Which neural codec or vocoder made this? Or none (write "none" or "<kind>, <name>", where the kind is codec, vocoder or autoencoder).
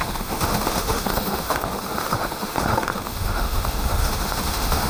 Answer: autoencoder, DAC-VAE